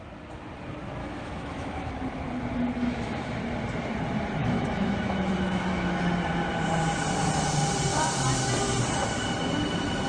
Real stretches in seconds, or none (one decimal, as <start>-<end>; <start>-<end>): 0.0-1.0; 1.9-2.8; 3.4-4.4; 6.0-10.1